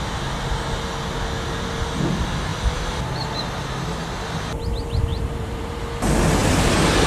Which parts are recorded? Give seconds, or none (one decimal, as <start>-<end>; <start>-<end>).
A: 0.0-5.1; 5.8-7.1